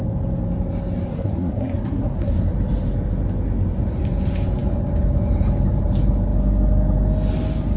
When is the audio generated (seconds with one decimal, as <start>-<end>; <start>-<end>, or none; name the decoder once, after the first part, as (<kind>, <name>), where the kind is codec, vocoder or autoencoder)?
1.1-2.4 (codec, SNAC)